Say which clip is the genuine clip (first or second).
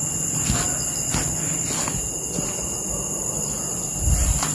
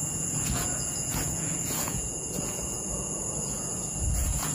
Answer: first